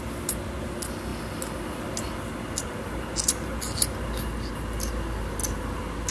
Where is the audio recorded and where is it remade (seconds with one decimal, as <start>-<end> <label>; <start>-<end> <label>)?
0.0-6.1 recorded